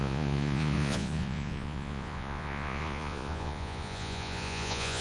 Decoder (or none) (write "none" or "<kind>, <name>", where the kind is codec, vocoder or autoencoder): vocoder, Vocos